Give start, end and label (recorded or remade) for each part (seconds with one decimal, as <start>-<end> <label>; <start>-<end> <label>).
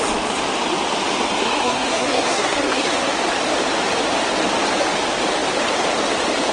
0.0-1.4 recorded; 1.4-3.1 remade; 3.1-6.5 recorded